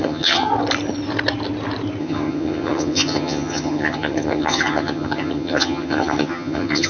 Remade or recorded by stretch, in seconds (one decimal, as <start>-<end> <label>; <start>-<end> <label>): 0.0-0.5 remade; 0.5-2.0 recorded; 2.0-6.9 remade